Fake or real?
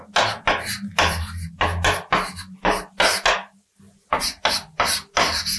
real